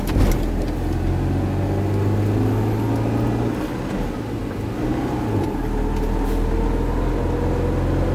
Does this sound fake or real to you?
real